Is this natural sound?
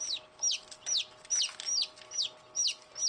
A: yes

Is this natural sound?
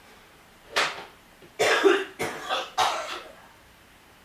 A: no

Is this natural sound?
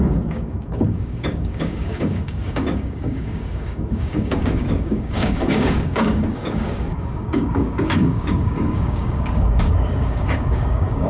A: no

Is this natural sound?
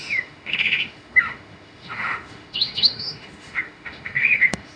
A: no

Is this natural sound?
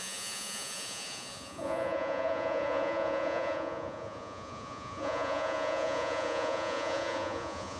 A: no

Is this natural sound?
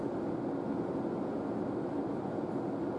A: yes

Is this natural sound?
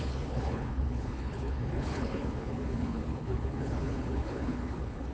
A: no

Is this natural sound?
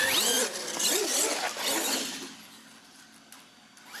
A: yes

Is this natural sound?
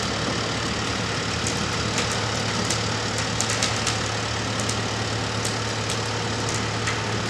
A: yes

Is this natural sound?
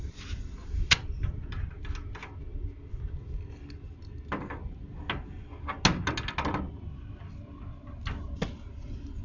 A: yes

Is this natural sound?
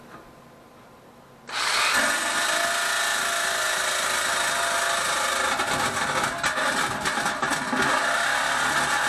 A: yes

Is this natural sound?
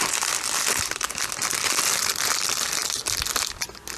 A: yes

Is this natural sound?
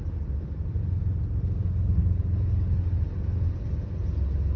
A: yes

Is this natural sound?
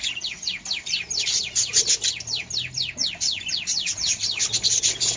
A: no